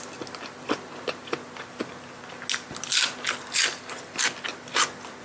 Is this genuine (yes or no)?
yes